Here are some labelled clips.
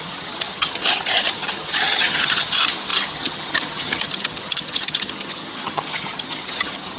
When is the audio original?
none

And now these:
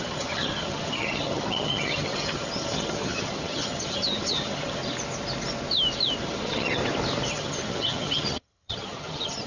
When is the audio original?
4.8-6.2; 6.8-7.3

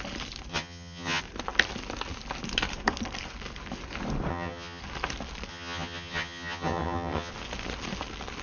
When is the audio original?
0.0-0.5; 1.2-4.3; 4.8-5.5; 7.3-8.4

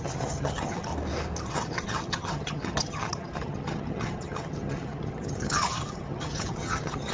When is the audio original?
0.9-1.5

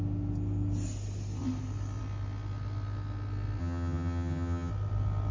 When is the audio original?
0.0-3.6; 4.7-5.3

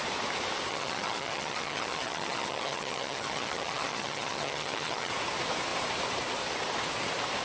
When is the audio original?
0.0-0.7; 5.1-7.4